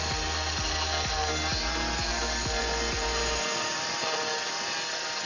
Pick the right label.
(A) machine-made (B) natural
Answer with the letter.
B